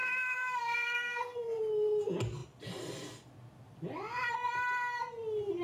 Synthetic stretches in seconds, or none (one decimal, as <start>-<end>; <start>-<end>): 0.0-1.6